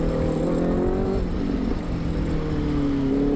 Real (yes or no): yes